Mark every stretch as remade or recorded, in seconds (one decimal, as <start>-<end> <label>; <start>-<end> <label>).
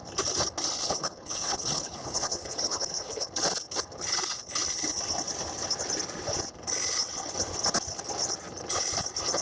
0.0-0.8 recorded; 0.8-3.3 remade; 3.3-9.4 recorded